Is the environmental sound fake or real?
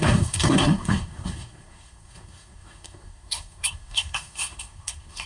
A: fake